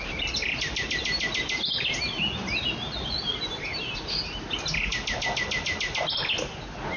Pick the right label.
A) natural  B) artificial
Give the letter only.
A